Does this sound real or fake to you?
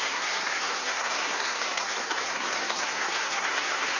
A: fake